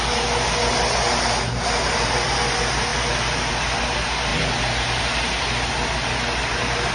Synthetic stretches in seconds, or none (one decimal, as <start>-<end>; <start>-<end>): none